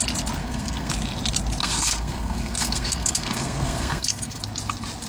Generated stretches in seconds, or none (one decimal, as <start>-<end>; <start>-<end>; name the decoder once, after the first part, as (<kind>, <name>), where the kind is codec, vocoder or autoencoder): 0.4-0.9 (codec, SNAC); 1.6-4.4